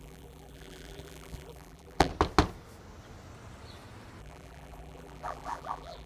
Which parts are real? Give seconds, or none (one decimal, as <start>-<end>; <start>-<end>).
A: 2.1-4.2